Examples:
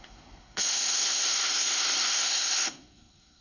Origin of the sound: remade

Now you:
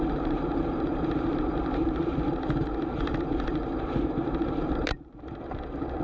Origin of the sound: remade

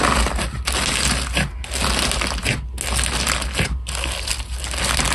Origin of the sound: recorded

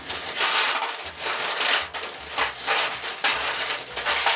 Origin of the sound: recorded